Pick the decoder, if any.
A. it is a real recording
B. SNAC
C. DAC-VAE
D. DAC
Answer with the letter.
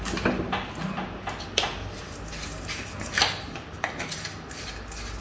A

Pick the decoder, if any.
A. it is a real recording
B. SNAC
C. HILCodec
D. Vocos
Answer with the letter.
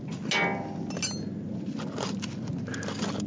A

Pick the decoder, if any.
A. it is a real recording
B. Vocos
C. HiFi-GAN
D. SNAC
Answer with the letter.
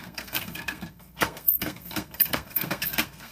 D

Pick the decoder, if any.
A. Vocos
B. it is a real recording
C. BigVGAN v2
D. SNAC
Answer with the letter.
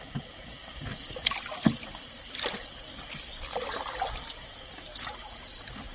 B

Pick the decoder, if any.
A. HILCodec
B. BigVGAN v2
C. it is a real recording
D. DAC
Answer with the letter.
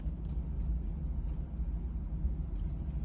C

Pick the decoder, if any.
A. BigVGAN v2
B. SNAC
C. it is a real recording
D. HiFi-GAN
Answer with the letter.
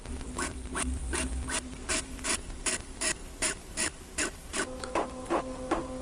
A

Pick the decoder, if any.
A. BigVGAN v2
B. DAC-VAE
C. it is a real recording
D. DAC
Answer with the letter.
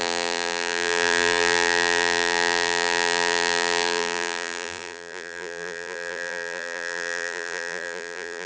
A